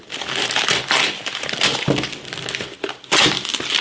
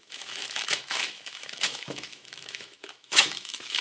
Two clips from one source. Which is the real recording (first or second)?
first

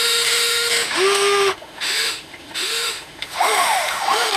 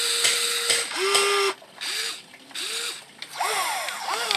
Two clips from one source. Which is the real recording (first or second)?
second